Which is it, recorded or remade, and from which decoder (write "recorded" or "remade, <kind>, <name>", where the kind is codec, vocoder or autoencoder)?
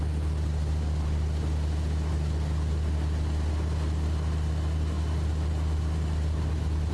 recorded